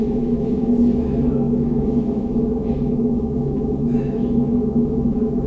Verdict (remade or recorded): remade